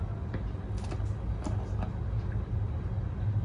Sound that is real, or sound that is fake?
real